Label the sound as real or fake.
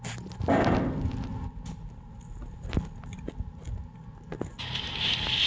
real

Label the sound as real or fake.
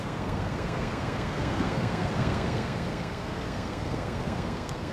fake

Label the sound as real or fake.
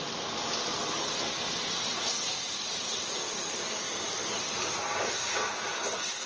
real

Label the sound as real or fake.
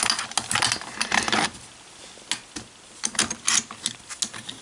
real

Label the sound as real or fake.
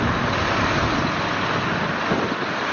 real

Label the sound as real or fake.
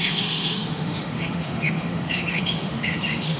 fake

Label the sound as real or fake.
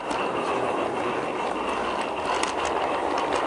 real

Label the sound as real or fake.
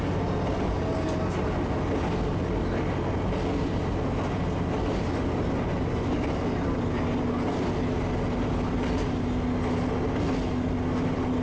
real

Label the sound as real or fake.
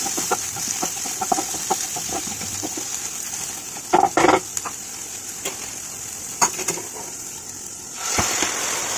fake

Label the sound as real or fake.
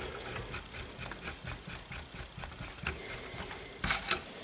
real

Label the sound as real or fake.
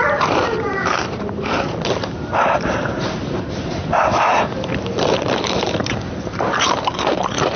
fake